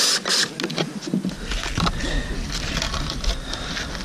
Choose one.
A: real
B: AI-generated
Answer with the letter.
A